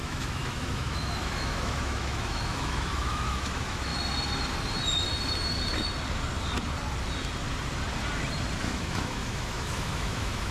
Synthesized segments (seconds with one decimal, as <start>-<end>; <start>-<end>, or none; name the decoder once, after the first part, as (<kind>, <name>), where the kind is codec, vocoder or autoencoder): 0.0-3.9 (autoencoder, DAC-VAE); 8.6-10.5